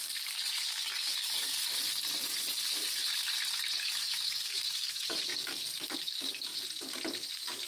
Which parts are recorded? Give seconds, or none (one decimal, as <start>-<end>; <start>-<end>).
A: 1.6-3.8; 6.5-7.3